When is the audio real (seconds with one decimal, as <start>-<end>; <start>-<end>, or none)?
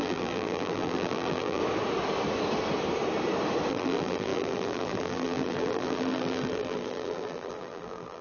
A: 1.6-3.7